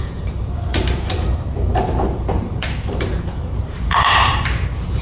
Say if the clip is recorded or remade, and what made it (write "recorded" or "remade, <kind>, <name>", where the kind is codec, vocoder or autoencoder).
remade, vocoder, BigVGAN v2